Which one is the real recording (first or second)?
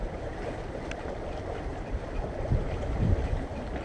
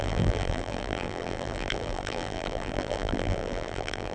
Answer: first